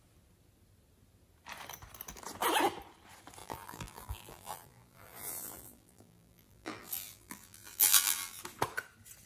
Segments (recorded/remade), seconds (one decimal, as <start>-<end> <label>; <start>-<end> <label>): 0.0-3.4 recorded; 3.4-8.4 remade; 8.4-9.3 recorded